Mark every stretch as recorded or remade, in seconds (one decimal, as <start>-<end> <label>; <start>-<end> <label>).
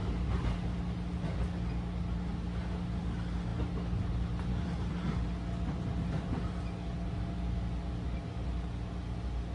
0.0-9.5 recorded